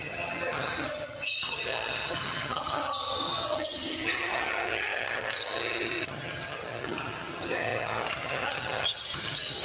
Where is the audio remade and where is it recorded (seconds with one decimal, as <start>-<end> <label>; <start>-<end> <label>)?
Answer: 0.0-9.6 remade